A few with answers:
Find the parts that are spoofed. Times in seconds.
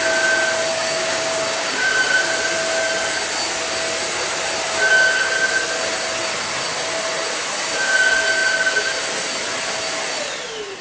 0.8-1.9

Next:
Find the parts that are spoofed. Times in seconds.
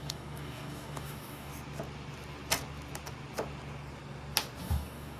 0.0-1.5; 4.6-5.2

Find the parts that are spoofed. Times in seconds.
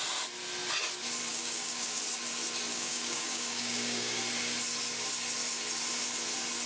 1.3-2.0; 2.7-4.2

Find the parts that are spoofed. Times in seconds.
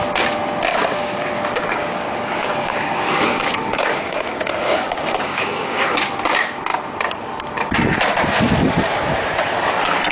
0.7-5.8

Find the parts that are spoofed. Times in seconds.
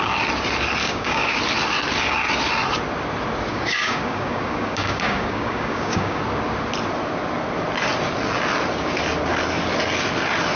0.8-1.4; 3.5-6.2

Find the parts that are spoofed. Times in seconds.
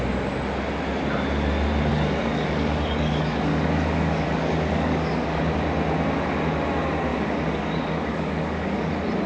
1.9-5.4; 7.1-8.9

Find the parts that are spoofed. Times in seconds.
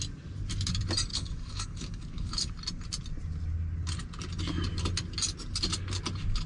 1.1-2.5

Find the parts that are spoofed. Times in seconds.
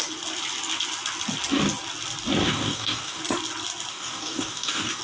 2.4-3.2; 3.9-5.0